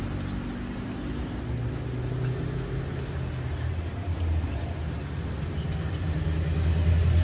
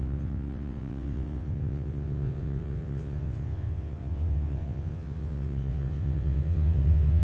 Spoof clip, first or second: second